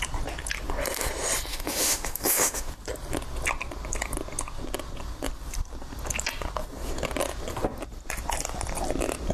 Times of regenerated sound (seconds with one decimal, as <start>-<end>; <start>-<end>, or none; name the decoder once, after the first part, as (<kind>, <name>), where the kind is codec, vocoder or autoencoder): 1.5-2.7 (autoencoder, DAC-VAE)